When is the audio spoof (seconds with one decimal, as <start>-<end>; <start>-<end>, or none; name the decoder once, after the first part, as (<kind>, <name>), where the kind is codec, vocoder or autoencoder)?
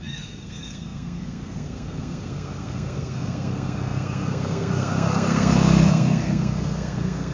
0.0-7.3 (codec, SNAC)